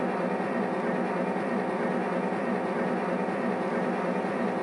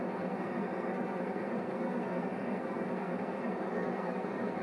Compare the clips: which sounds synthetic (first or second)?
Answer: second